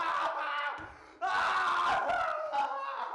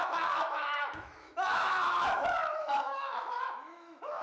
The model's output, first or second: second